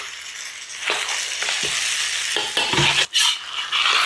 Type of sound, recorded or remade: recorded